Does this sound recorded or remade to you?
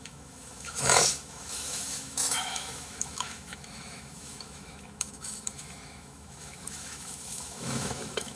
remade